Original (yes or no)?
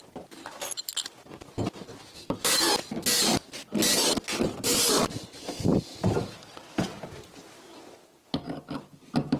yes